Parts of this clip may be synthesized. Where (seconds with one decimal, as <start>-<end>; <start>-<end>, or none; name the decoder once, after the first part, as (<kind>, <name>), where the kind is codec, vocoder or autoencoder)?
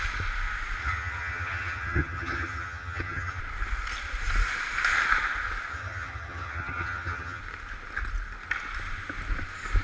0.8-3.4 (vocoder, HiFi-GAN); 5.7-7.4